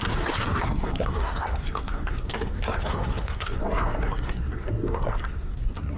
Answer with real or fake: fake